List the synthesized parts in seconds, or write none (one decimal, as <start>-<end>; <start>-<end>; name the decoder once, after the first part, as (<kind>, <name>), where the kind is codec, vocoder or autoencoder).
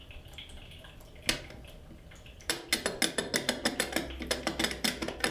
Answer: none